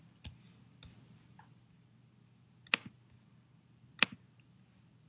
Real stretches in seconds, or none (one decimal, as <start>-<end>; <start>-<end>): 0.0-5.1